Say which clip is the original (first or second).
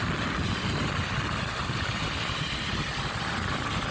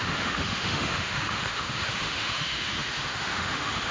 first